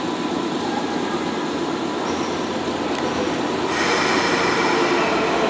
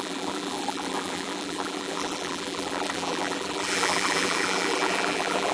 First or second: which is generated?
second